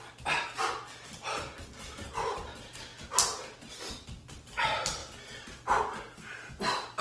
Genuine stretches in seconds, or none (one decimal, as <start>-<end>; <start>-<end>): 0.0-7.0